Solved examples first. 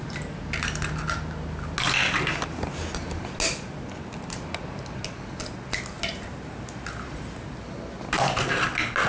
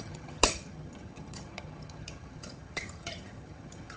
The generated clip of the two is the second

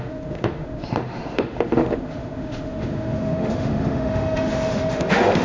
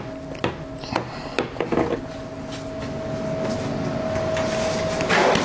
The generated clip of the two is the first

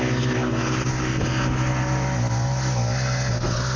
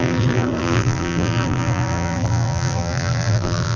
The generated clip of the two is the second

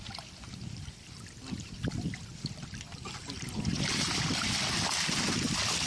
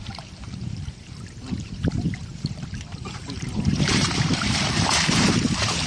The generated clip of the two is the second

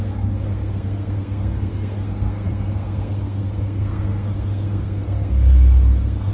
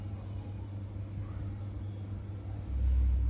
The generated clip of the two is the first